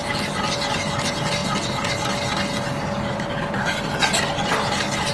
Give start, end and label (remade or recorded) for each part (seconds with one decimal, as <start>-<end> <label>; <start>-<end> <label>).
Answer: 0.0-5.1 recorded